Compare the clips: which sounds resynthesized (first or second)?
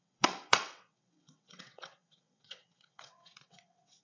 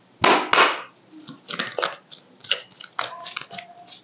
first